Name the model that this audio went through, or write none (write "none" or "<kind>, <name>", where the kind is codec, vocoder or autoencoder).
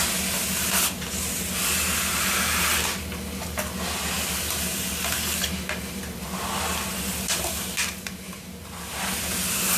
none